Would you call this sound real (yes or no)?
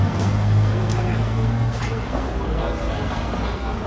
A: no